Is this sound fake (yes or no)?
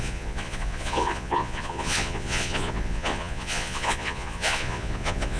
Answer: yes